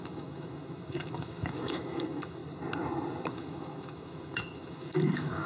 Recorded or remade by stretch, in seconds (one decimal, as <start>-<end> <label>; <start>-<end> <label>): 0.0-2.4 remade; 2.4-3.3 recorded; 3.3-5.5 remade